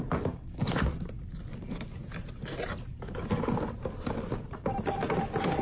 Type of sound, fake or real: real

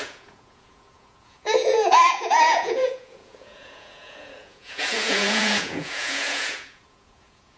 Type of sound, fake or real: fake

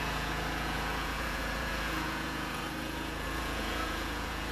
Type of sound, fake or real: fake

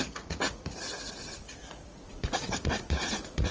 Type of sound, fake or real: fake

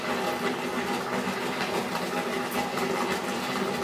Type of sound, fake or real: real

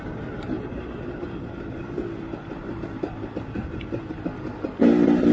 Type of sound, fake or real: real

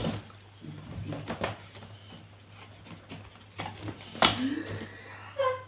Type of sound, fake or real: real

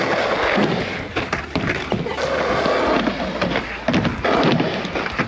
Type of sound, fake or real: real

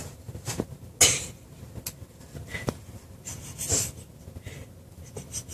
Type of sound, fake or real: real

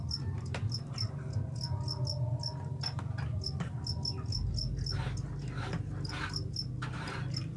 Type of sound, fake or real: real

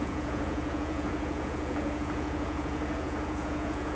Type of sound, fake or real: fake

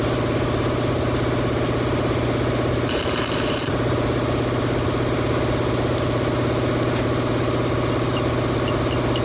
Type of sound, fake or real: real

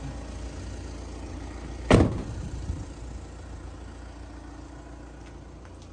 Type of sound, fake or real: real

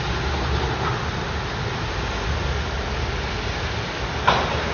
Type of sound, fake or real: real